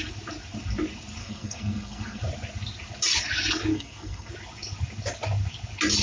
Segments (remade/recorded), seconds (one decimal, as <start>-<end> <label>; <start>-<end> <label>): 0.0-1.2 recorded; 1.2-2.2 remade; 2.2-3.7 recorded; 3.7-4.3 remade; 4.3-6.0 recorded